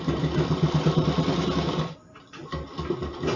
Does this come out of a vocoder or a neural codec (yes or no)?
no